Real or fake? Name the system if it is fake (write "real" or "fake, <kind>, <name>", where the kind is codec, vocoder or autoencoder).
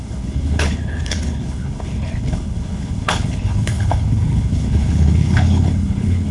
fake, codec, HILCodec